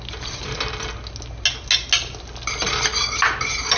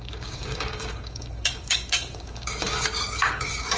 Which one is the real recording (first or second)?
first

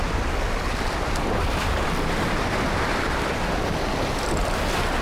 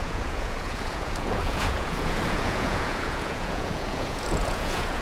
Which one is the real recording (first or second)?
first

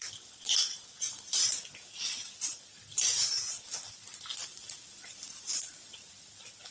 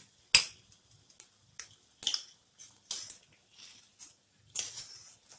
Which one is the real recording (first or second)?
second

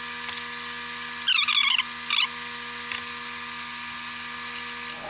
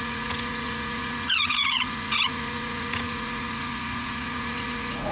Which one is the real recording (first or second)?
first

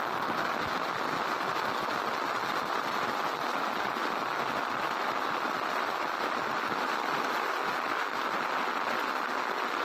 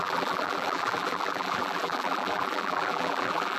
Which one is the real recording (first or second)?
first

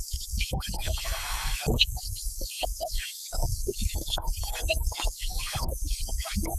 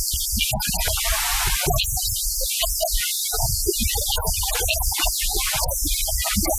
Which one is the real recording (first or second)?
second